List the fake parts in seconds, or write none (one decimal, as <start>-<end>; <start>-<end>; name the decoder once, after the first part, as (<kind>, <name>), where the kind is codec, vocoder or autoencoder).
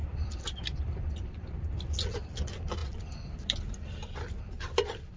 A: 0.0-1.3 (vocoder, BigVGAN v2); 2.8-5.2